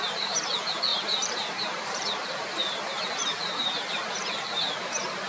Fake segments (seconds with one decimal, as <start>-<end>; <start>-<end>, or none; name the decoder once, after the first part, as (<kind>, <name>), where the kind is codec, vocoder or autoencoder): 0.9-4.1 (vocoder, BigVGAN v2)